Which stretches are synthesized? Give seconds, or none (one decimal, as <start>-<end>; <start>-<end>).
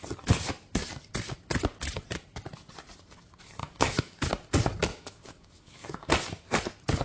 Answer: 3.6-4.3; 4.9-6.1